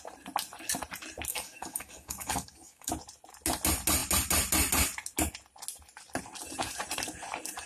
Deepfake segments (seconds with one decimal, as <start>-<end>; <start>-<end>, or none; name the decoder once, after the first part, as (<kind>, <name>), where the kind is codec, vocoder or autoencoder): 1.3-2.9 (codec, DAC)